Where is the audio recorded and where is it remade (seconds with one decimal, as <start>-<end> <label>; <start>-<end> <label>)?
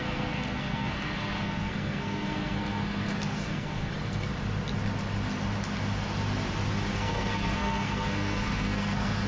0.0-4.3 remade; 4.3-6.9 recorded; 6.9-9.3 remade